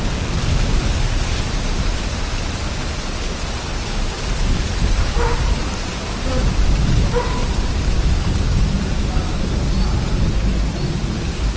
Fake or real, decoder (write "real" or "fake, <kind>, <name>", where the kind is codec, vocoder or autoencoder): real